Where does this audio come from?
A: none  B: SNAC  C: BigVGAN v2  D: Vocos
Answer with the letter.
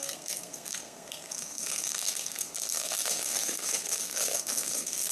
B